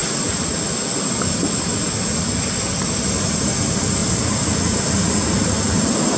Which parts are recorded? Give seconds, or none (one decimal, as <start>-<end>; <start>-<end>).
0.0-6.2